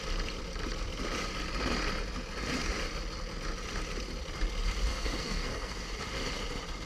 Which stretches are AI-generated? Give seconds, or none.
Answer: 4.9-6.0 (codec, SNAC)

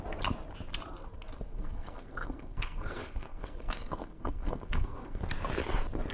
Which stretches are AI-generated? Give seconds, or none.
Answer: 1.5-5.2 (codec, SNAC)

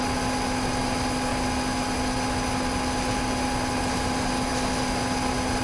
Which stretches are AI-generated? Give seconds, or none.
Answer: none

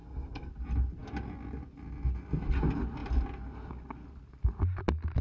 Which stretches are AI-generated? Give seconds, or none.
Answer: 0.0-0.5 (codec, SNAC)

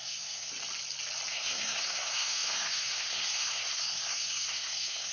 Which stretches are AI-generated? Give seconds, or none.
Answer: 0.0-0.5 (codec, SNAC); 1.3-5.1